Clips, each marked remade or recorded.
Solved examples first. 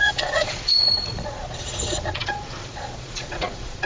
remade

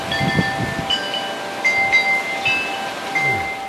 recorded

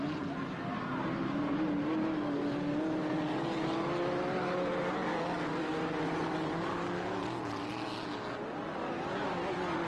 recorded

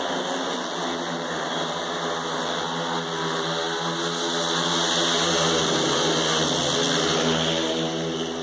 recorded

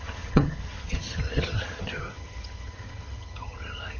remade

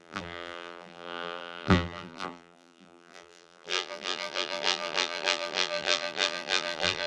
remade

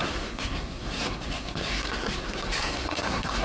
remade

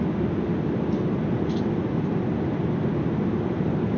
recorded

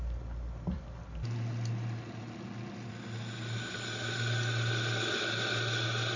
recorded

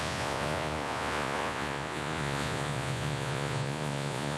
remade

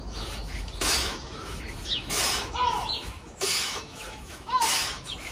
remade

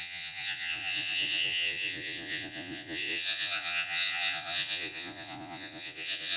remade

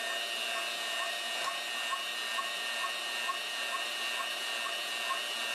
recorded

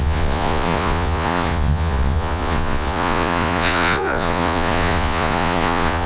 remade